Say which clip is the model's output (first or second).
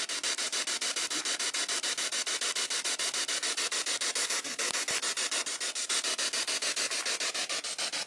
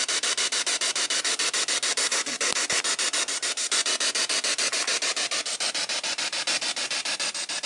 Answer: second